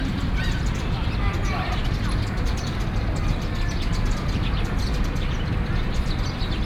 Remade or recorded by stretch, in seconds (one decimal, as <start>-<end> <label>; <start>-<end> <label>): 0.0-6.7 remade